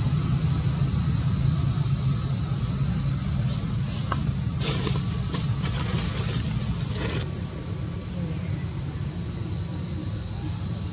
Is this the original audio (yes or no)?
yes